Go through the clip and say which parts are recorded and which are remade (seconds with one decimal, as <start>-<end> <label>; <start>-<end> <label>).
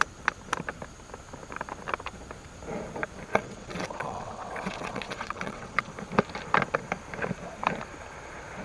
0.0-3.3 recorded; 3.3-5.9 remade; 5.9-8.6 recorded